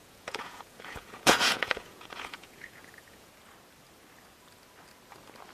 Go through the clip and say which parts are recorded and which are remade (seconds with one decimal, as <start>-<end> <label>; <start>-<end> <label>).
0.0-3.3 remade; 3.3-5.5 recorded